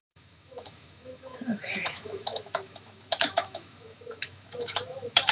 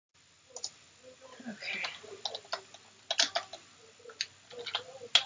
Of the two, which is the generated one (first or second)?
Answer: first